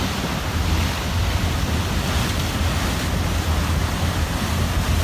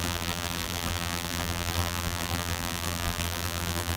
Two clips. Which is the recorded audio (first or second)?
first